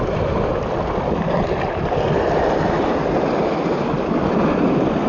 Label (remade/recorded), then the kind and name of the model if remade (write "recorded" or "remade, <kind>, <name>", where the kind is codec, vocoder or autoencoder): recorded